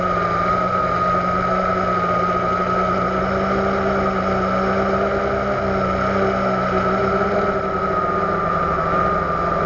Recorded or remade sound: recorded